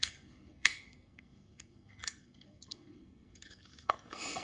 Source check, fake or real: fake